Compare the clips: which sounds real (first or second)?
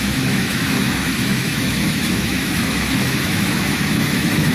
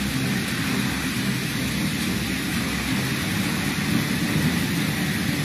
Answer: second